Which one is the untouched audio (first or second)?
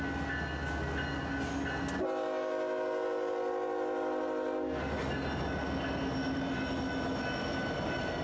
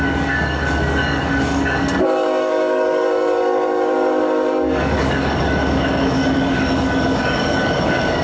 first